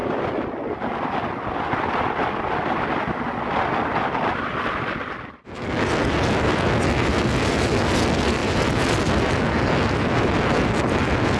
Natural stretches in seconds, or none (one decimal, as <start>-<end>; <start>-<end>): 0.0-11.4